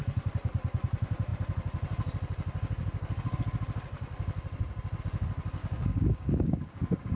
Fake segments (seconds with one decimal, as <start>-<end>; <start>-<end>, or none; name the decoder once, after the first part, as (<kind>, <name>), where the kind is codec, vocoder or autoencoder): 5.6-7.2 (codec, DAC)